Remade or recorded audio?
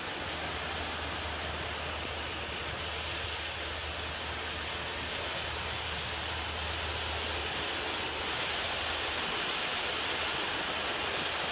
recorded